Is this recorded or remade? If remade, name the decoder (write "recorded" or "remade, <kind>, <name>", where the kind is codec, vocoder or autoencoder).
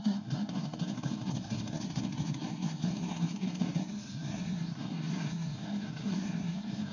remade, codec, SNAC